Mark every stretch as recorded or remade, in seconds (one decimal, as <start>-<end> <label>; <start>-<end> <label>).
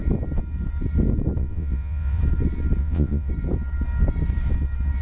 0.0-1.4 recorded; 1.4-2.2 remade; 2.2-2.8 recorded; 2.8-3.3 remade; 3.3-5.0 recorded